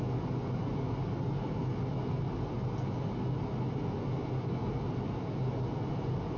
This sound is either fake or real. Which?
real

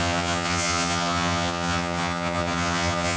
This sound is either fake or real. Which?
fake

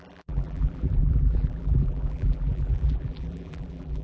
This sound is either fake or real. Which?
fake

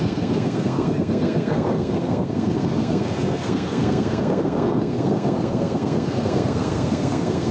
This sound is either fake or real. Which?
fake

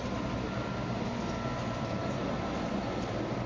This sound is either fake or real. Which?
real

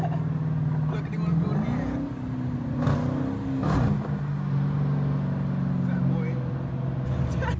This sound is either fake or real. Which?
real